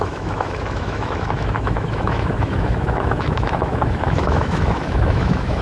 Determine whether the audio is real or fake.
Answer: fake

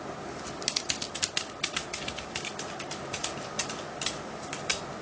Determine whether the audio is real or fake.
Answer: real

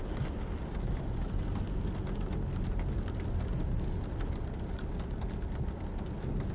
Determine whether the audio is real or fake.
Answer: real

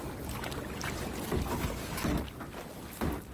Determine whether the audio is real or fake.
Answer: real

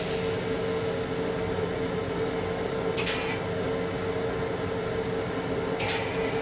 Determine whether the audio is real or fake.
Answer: real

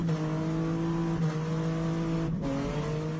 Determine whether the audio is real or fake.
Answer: real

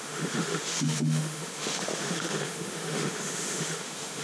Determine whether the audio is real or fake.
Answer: fake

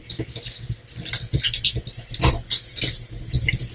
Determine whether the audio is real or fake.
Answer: real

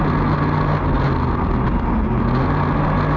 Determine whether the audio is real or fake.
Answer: real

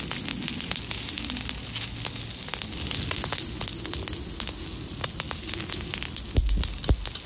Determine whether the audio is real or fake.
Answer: real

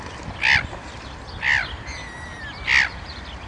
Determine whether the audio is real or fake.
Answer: real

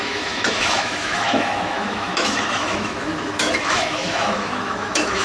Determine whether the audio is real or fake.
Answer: fake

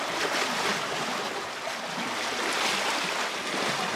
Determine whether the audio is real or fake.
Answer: real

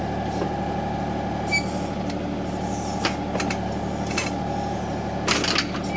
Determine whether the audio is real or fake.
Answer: real